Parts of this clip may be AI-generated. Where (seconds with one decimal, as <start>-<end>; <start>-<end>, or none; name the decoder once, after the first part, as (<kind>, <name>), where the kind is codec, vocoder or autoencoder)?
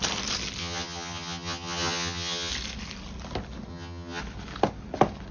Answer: 0.6-2.5 (vocoder, HiFi-GAN); 3.7-4.2